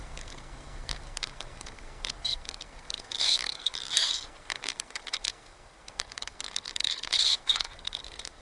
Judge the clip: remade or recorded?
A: remade